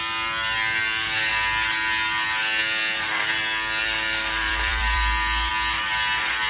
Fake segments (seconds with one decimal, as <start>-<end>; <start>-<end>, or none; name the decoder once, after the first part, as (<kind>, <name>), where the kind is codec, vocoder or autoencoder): 3.8-5.5 (vocoder, BigVGAN v2)